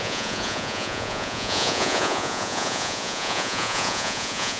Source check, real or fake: fake